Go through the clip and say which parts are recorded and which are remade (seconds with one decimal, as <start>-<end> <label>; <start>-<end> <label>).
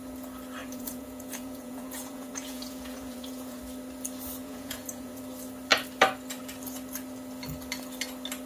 0.0-0.6 recorded; 0.6-3.6 remade; 3.6-4.4 recorded; 4.4-5.2 remade; 5.2-8.5 recorded